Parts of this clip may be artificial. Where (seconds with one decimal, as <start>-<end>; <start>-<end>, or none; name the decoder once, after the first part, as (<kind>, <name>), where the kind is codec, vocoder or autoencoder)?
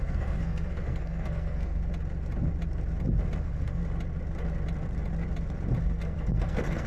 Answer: 0.0-1.9 (codec, SNAC); 3.4-3.8; 5.8-6.9